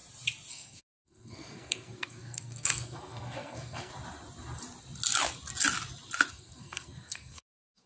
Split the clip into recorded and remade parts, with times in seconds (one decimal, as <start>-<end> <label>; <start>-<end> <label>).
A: 0.0-0.5 recorded; 0.5-3.9 remade; 3.9-6.3 recorded; 6.3-7.9 remade